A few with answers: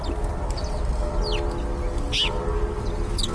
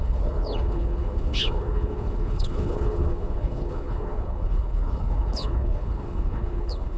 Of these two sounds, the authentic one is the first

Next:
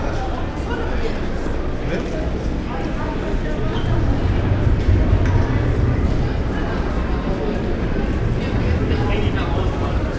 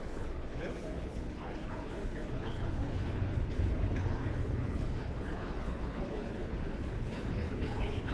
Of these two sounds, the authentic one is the first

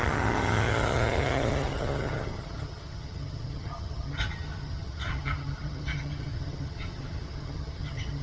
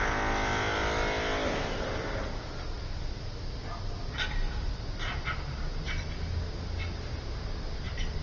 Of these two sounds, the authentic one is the second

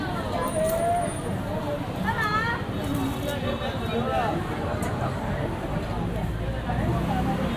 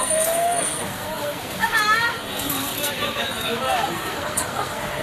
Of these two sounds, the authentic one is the first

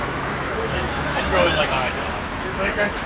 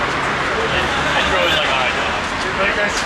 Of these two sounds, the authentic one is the second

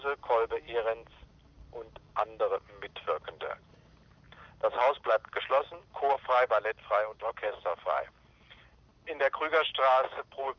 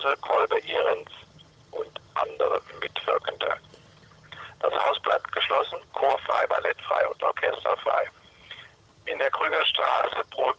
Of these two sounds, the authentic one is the first